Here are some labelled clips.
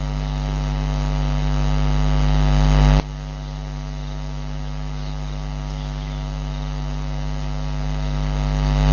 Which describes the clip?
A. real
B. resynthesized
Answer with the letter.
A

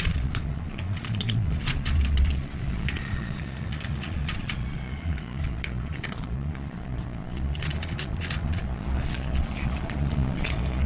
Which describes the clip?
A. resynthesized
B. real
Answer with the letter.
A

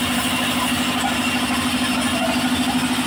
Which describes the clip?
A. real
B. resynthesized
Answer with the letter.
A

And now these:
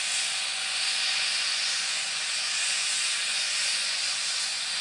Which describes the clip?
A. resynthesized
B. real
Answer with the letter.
A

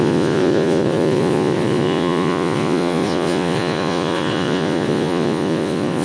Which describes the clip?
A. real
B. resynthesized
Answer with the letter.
B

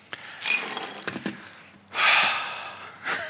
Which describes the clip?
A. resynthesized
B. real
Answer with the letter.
B